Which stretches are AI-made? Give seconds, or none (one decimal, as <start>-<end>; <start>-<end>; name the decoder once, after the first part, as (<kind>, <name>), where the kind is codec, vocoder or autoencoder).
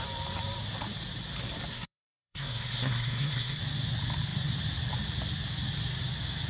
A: 1.7-3.6 (codec, SNAC)